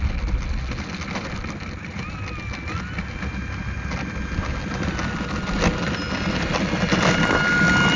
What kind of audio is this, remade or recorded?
recorded